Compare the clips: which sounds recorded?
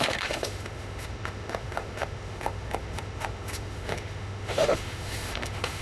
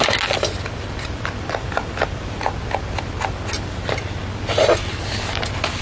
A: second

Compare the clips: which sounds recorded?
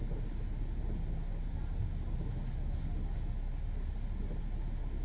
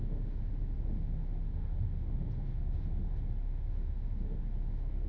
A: first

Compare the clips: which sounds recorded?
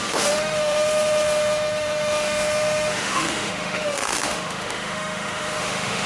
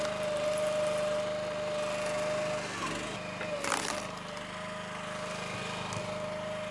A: second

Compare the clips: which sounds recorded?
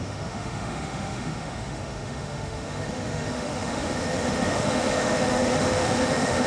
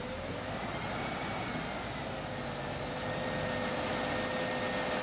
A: second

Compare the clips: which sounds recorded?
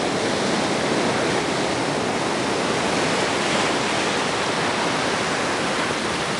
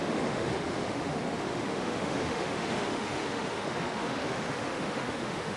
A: first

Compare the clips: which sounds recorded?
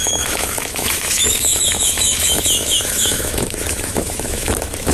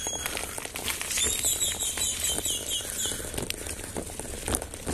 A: second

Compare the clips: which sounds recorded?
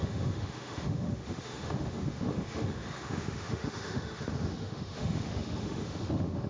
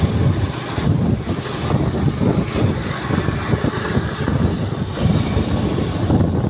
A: second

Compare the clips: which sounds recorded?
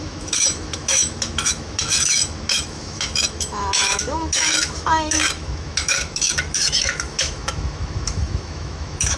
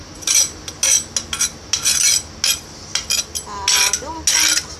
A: second